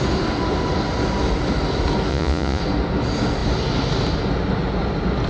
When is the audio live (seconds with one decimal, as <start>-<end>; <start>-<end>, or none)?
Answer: 0.0-2.1; 2.6-5.3